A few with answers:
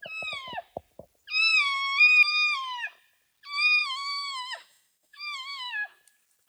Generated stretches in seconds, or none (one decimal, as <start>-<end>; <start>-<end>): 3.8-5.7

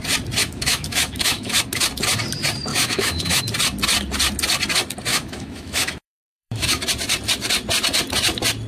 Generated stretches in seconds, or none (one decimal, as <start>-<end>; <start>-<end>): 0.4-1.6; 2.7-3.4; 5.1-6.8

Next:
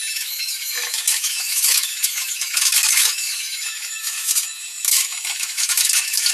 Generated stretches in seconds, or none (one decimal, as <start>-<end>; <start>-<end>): 0.0-6.3